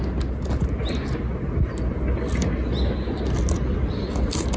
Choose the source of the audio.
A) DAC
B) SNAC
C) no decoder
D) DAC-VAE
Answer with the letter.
C